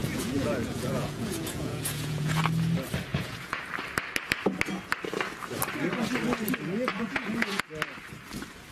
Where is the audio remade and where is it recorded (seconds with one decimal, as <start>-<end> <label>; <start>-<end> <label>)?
0.0-2.4 remade; 2.4-3.1 recorded; 3.1-3.6 remade; 3.6-6.9 recorded; 6.9-7.6 remade; 7.6-8.7 recorded

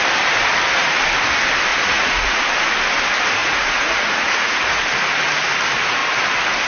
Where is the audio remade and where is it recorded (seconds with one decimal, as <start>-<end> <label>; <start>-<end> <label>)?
0.0-1.7 recorded; 1.7-2.4 remade; 2.4-3.4 recorded; 3.4-4.8 remade; 4.8-6.7 recorded

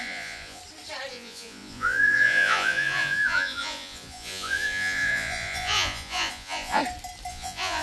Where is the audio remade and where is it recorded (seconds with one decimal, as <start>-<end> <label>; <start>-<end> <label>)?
0.0-0.6 remade; 0.6-1.1 recorded; 1.1-6.8 remade; 6.8-7.3 recorded; 7.3-7.8 remade

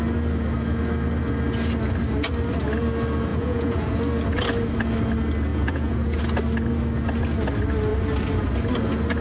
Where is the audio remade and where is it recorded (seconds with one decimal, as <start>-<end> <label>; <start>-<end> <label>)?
0.0-3.3 recorded; 3.3-4.0 remade; 4.0-5.5 recorded; 5.5-6.2 remade; 6.2-9.2 recorded

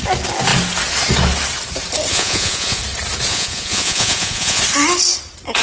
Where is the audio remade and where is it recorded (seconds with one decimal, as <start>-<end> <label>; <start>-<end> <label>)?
0.0-2.1 recorded; 2.1-2.8 remade; 2.8-3.3 recorded; 3.3-4.6 remade; 4.6-5.6 recorded

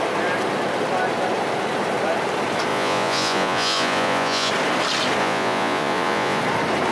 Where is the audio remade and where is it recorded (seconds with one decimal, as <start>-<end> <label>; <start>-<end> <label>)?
0.0-2.7 recorded; 2.7-4.5 remade; 4.5-5.2 recorded; 5.2-6.4 remade; 6.4-6.9 recorded

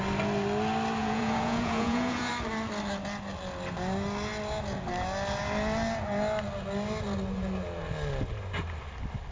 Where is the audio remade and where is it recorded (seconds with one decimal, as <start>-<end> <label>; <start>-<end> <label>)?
0.0-1.0 recorded; 1.0-2.3 remade; 2.3-9.3 recorded